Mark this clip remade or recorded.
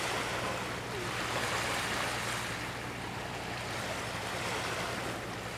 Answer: recorded